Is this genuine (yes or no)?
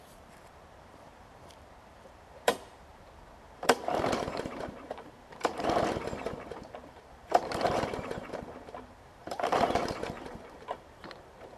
no